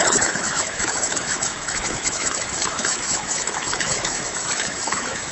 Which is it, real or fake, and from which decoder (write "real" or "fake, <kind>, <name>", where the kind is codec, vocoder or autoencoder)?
fake, autoencoder, DAC-VAE